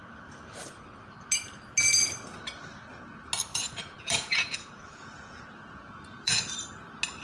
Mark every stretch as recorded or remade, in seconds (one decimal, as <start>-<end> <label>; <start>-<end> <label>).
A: 0.0-3.5 recorded; 3.5-6.4 remade; 6.4-7.2 recorded